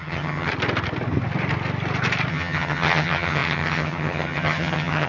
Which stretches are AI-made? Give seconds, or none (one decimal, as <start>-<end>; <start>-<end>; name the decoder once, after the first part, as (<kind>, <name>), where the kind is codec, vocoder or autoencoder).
0.0-0.5 (vocoder, HiFi-GAN); 2.3-5.1